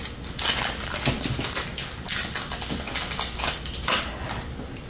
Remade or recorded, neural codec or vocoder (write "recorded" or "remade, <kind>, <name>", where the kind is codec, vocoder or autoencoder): recorded